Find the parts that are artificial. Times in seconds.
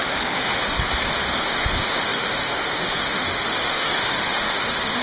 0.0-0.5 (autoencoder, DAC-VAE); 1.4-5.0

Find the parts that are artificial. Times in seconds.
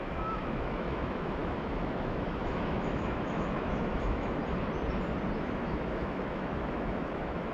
0.0-4.4 (autoencoder, DAC-VAE); 5.4-7.5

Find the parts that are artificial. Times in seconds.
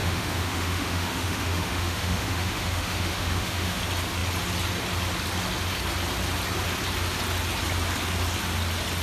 0.0-3.8 (autoencoder, DAC-VAE)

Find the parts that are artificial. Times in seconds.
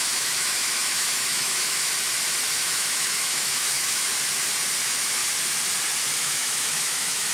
0.0-1.9 (autoencoder, DAC-VAE); 2.5-4.1; 4.8-5.2; 6.2-7.3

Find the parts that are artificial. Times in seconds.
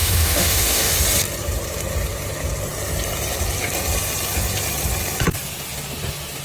0.0-0.9 (autoencoder, DAC-VAE)